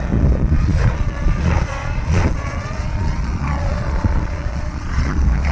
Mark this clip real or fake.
fake